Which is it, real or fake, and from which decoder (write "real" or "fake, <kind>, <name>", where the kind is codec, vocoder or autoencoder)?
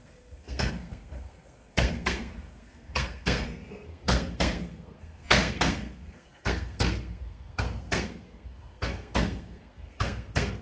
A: fake, codec, SNAC